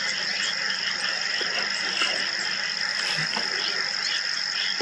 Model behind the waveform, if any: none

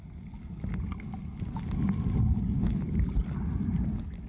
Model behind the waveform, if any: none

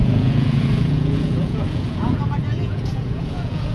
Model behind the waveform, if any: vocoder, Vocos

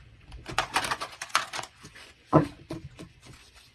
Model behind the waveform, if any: vocoder, Vocos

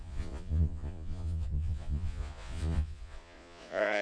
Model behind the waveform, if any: vocoder, Vocos